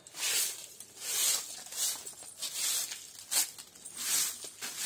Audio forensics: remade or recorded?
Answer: recorded